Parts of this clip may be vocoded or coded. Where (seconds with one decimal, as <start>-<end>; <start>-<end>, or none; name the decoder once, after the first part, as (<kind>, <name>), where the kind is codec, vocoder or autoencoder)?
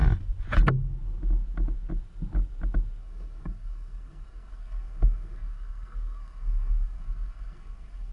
3.0-8.1 (codec, SNAC)